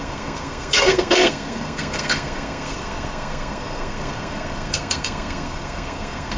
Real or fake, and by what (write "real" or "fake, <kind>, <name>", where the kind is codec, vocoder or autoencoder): fake, codec, SNAC